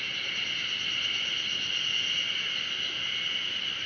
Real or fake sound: real